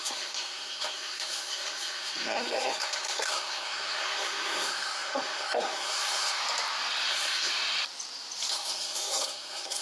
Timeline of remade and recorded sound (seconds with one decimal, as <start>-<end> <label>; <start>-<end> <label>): 0.0-6.4 remade; 6.4-7.1 recorded; 7.1-7.5 remade; 7.5-8.5 recorded; 8.5-9.8 remade